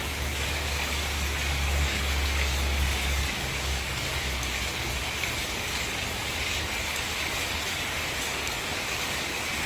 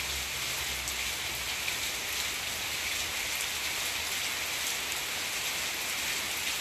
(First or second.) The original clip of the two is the second